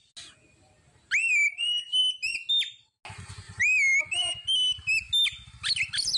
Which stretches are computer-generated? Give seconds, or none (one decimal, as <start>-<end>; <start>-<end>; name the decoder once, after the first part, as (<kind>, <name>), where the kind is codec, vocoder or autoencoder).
none